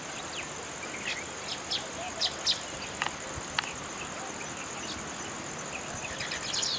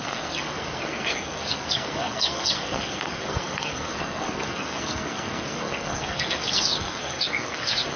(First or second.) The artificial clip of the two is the second